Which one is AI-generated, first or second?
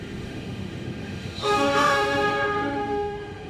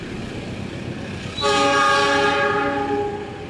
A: first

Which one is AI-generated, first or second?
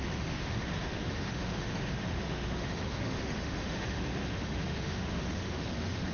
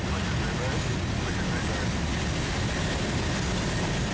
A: first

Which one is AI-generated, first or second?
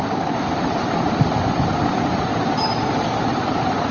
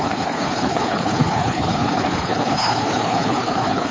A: second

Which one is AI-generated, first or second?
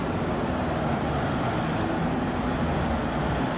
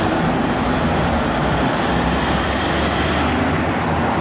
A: second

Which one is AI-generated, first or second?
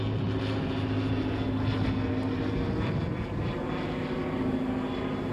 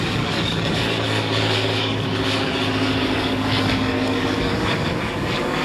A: second